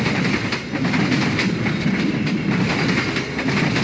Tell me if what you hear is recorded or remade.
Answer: recorded